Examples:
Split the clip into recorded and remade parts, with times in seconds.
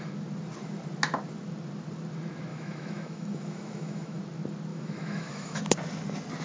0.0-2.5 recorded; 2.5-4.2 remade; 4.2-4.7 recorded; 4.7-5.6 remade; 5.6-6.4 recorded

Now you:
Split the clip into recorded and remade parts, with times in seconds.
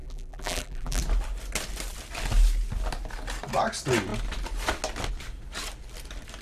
0.0-1.0 remade; 1.0-6.4 recorded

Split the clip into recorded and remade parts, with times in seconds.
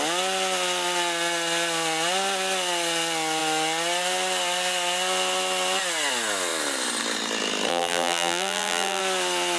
0.0-7.7 recorded; 7.7-9.0 remade; 9.0-9.6 recorded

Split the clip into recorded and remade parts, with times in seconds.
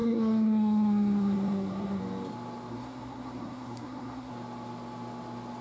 0.0-2.0 remade; 2.0-2.7 recorded; 2.7-4.3 remade; 4.3-5.6 recorded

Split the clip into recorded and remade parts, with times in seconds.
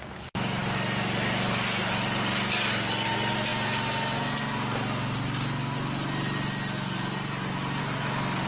0.0-8.5 recorded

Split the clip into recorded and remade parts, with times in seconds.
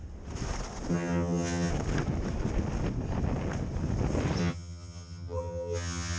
0.0-0.9 recorded; 0.9-1.7 remade; 1.7-4.4 recorded; 4.4-6.2 remade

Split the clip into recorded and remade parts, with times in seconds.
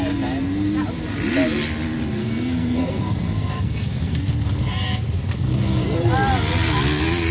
0.0-2.2 recorded; 2.2-6.1 remade; 6.1-7.3 recorded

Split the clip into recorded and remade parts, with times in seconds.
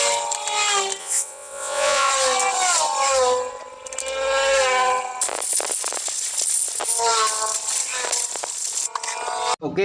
0.0-1.0 recorded; 1.0-2.1 remade; 2.1-9.8 recorded